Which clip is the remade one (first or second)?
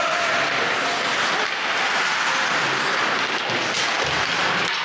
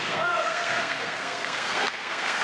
second